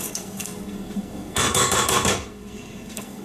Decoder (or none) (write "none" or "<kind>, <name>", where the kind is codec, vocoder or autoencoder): codec, SNAC